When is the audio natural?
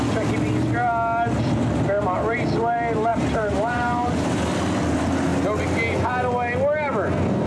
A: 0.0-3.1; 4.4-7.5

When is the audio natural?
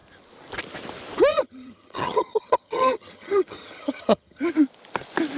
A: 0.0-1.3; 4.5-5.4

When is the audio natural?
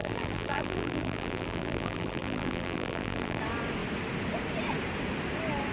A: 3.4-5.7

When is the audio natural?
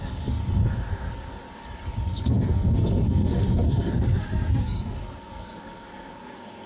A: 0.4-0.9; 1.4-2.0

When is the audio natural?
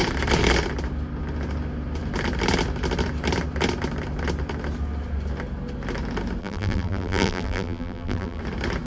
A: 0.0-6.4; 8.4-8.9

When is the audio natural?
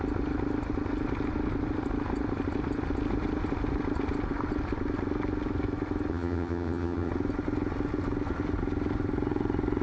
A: 0.0-6.1; 7.1-9.8